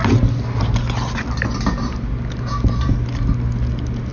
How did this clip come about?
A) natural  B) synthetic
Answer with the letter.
A